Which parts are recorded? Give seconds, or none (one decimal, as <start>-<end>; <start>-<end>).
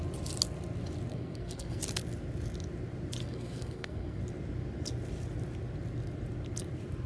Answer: 0.0-1.1; 1.8-3.2; 4.2-7.1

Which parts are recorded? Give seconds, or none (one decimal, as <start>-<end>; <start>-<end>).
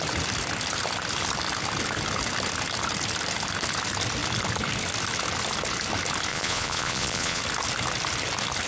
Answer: 0.0-6.3; 7.4-8.7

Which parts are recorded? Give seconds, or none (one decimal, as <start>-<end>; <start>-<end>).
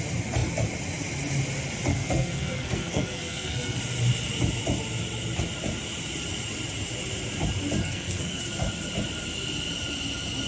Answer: 0.0-1.9; 3.8-7.8; 8.4-10.5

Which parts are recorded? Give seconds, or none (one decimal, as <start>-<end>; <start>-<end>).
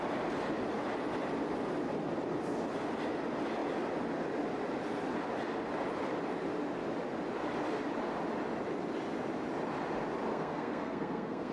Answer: 0.0-10.3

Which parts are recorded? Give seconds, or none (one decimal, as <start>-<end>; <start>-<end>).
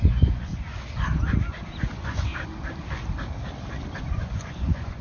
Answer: 0.5-1.8; 2.3-4.0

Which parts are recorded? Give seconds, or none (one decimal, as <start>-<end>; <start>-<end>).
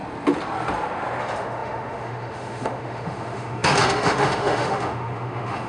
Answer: 0.0-1.2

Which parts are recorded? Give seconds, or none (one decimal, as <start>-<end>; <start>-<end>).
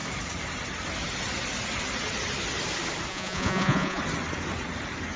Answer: 0.0-3.1; 4.0-5.2